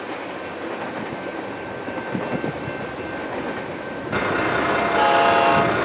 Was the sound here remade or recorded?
recorded